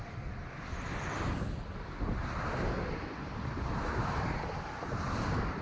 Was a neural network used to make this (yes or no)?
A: no